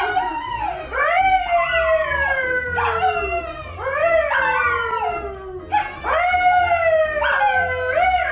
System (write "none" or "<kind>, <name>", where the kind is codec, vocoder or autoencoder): none